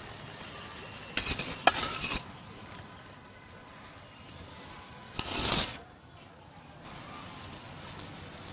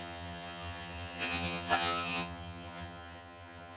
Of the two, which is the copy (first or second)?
second